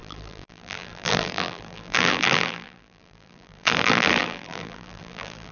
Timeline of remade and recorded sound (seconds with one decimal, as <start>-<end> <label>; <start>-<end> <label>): 0.0-5.5 remade